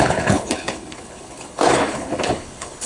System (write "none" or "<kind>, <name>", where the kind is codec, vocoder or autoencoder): codec, HILCodec